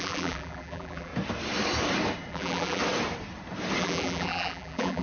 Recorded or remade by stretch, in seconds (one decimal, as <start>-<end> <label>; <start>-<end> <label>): 0.0-1.1 remade; 1.1-2.3 recorded; 2.3-2.8 remade; 2.8-3.8 recorded; 3.8-5.0 remade